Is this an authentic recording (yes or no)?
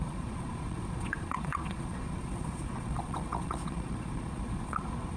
no